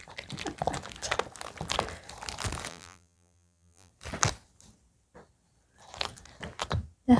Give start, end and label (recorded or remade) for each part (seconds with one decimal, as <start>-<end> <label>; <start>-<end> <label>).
0.0-2.7 recorded; 2.7-3.9 remade; 3.9-7.2 recorded